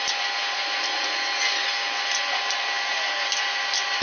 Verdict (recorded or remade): recorded